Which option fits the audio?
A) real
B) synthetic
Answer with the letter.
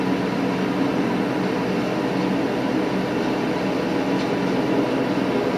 A